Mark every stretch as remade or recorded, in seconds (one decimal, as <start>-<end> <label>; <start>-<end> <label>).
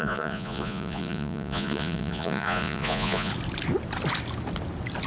0.0-3.3 remade; 3.3-5.1 recorded